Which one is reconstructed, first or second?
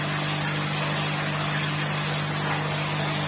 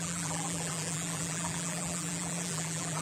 second